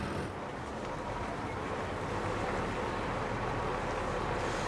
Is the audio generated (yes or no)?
no